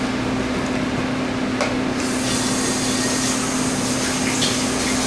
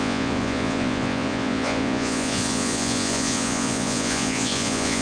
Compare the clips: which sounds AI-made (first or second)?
second